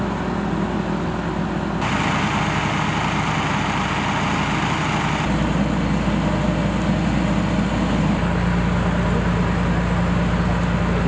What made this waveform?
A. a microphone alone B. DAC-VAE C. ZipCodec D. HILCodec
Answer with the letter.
A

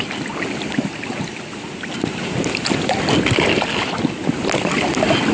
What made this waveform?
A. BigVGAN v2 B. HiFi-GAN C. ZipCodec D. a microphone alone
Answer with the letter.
D